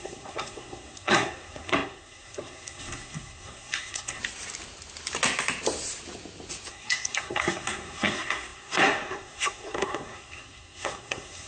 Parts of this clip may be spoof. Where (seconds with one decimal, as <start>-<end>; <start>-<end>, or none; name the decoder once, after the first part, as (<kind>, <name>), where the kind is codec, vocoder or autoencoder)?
0.0-4.2 (codec, SNAC); 6.7-11.5